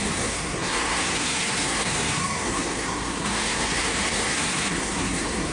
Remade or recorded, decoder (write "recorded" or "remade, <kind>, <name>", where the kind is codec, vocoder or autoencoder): remade, codec, SNAC